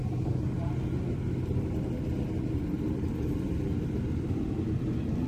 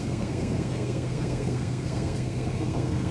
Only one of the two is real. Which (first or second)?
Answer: first